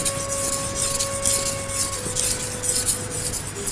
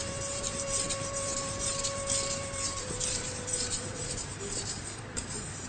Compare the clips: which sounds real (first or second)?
first